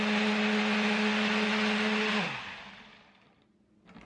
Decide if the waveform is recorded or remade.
recorded